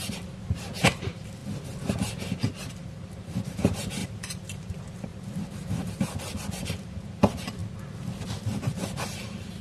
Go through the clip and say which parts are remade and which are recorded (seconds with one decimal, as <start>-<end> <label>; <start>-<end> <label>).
0.0-1.4 remade; 1.4-2.6 recorded; 2.6-7.6 remade; 7.6-8.1 recorded; 8.1-9.6 remade

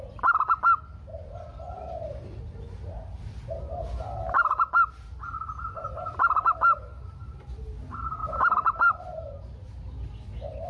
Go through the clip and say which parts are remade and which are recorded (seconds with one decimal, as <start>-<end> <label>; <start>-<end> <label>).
0.0-1.1 recorded; 1.1-2.4 remade; 2.4-8.2 recorded; 8.2-10.7 remade

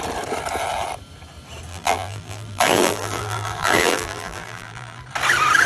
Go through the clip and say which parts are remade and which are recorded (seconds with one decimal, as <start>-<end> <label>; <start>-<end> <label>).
0.0-1.7 recorded; 1.7-5.0 remade; 5.0-5.7 recorded